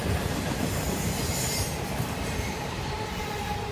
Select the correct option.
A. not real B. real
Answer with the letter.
A